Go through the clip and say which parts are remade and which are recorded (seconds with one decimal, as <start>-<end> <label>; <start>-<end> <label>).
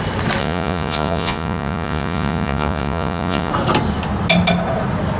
0.0-0.4 recorded; 0.4-3.5 remade; 3.5-5.2 recorded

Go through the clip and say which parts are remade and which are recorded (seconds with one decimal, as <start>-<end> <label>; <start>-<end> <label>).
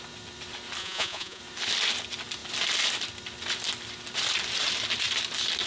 0.0-0.8 recorded; 0.8-1.4 remade; 1.4-5.7 recorded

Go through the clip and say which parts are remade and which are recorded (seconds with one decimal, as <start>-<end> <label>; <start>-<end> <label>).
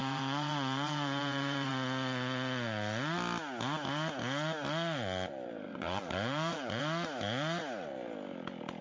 0.0-1.7 remade; 1.7-5.7 recorded; 5.7-6.8 remade; 6.8-8.8 recorded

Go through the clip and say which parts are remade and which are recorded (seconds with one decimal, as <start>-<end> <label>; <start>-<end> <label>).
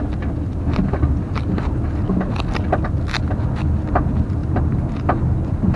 0.0-5.8 recorded